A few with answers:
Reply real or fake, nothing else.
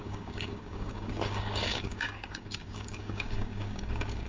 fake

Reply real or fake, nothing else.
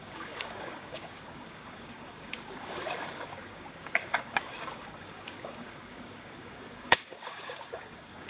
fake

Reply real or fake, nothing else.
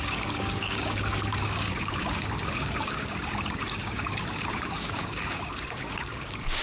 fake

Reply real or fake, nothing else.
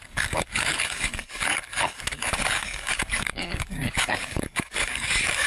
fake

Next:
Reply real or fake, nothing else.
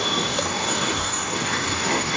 fake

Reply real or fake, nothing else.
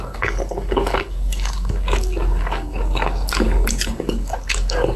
fake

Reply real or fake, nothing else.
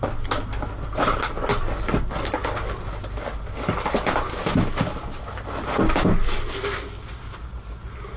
real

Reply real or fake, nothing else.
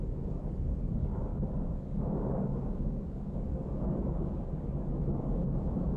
fake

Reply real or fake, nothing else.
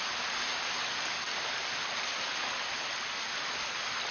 real